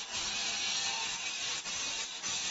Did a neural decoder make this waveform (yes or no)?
no